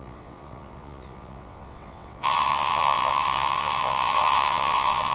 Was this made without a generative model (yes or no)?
no